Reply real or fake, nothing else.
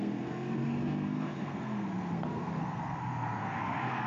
fake